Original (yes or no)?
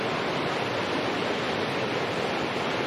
yes